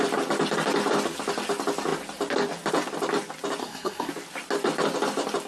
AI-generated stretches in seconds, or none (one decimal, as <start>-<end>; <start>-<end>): 3.6-4.1

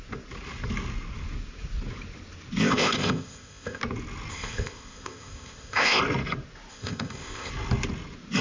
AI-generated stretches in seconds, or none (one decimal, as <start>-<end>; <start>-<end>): 2.6-3.8; 4.3-6.0; 6.7-7.5

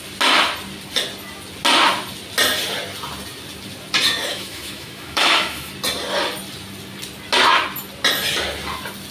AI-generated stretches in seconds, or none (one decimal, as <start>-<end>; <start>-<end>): 4.3-5.7

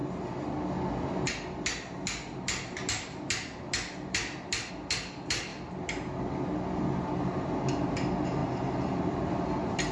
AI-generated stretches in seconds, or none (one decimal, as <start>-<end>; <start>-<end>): none

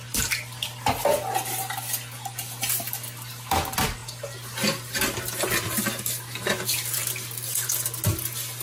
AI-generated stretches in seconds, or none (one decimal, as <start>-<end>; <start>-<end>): none